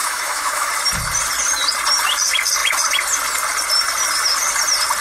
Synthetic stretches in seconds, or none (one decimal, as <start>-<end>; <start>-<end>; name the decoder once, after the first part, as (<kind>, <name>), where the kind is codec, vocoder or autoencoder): 0.0-0.7 (autoencoder, DAC-VAE)